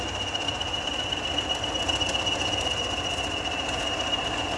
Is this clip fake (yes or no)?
no